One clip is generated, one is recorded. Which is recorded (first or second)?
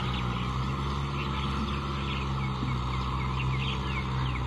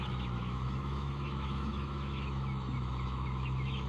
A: first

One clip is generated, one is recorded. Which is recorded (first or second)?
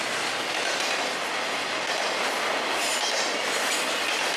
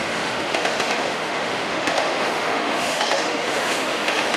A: first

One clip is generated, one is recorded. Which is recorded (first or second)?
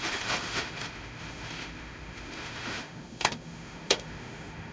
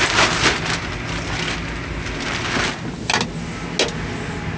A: second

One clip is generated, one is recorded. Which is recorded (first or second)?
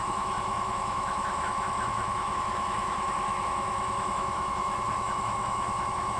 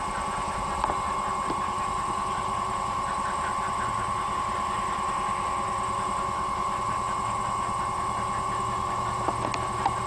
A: second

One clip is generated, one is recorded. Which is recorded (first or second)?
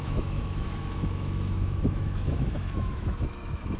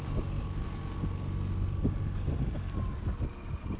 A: second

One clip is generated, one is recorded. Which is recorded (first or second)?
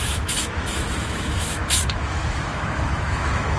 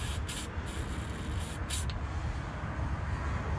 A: second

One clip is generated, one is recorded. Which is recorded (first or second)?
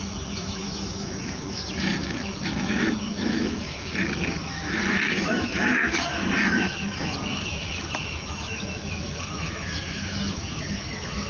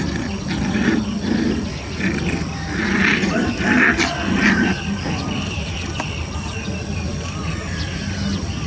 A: second